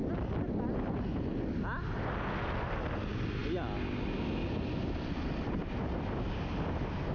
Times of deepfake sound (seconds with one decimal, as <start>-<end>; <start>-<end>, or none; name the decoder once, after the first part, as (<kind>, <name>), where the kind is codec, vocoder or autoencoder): none